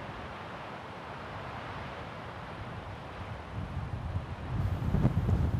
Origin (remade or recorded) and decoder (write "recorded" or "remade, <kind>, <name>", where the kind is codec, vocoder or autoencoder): remade, vocoder, BigVGAN v2